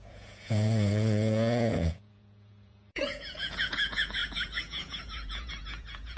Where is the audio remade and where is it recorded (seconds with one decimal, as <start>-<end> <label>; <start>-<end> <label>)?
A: 0.0-6.2 remade